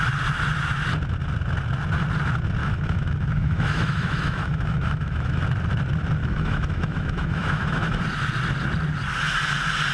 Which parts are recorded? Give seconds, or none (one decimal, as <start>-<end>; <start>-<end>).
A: 0.0-2.6; 5.4-6.2; 8.0-9.9